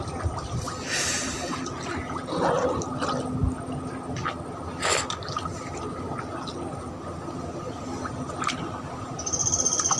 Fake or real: real